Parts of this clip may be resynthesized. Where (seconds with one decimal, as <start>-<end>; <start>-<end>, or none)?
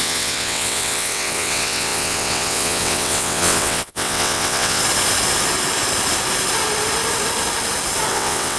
0.0-4.8; 8.1-8.6